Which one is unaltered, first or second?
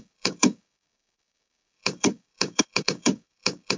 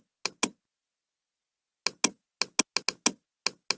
second